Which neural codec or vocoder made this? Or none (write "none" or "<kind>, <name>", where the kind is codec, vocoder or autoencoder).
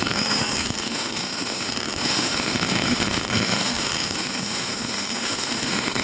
autoencoder, DAC-VAE